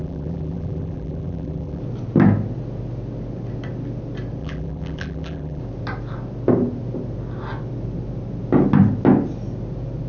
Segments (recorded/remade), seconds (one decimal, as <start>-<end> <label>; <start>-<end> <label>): 0.0-1.8 remade; 1.8-4.4 recorded; 4.4-5.6 remade; 5.6-10.1 recorded